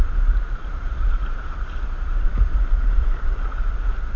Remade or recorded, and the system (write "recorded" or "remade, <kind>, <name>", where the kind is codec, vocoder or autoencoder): remade, vocoder, BigVGAN v2